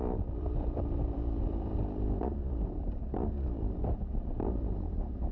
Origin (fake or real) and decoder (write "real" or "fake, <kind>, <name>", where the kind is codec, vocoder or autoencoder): fake, vocoder, BigVGAN v2